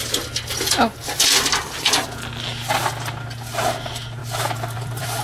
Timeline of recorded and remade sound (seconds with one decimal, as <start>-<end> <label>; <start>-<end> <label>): 0.0-4.2 recorded; 4.2-5.2 remade